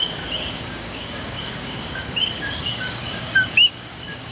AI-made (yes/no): yes